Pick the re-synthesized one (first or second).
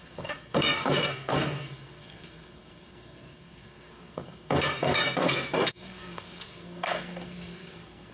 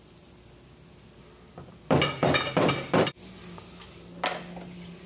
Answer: first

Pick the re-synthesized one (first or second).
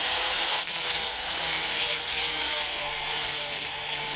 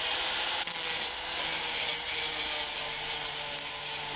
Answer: first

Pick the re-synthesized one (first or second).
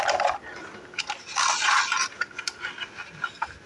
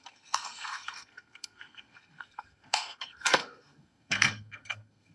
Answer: second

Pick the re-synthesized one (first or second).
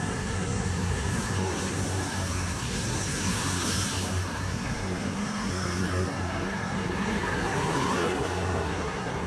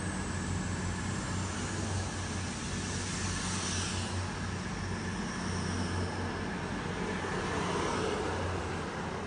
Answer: first